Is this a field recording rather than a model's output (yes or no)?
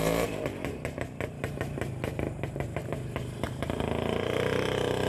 no